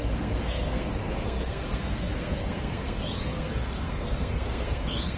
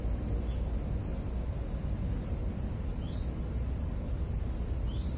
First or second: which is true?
second